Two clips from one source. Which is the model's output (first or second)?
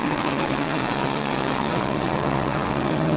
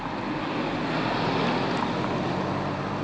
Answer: first